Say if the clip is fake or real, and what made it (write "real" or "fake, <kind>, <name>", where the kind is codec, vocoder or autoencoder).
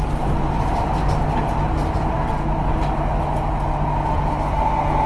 real